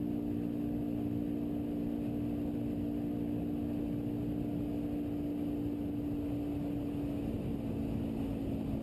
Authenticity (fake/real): real